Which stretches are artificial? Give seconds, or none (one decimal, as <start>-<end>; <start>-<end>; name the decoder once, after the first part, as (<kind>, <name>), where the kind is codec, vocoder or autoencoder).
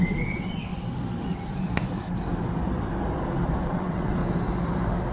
0.0-0.7 (vocoder, WaveNeXt); 3.8-4.2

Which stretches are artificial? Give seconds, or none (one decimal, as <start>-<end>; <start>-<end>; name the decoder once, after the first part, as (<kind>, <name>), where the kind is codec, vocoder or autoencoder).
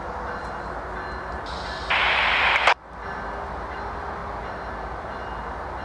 none